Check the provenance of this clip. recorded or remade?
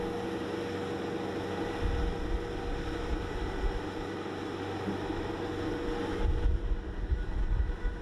recorded